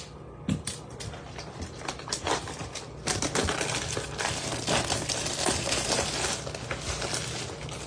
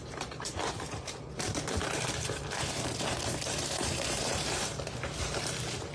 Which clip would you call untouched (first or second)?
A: first